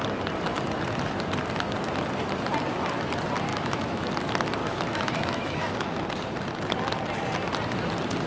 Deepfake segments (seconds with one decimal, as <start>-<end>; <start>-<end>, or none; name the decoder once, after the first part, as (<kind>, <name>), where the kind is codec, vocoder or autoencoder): 3.5-4.1 (autoencoder, DAC-VAE); 4.6-6.0